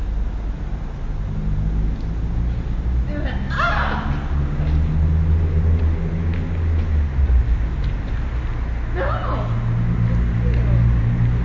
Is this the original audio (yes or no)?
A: yes